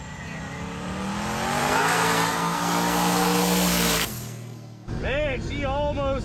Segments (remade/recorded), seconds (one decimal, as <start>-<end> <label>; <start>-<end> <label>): 0.0-1.6 recorded; 1.6-5.0 remade; 5.0-6.2 recorded